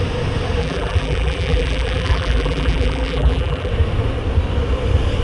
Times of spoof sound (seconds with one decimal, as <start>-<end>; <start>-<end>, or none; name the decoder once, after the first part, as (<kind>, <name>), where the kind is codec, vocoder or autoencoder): 0.6-3.7 (vocoder, BigVGAN v2)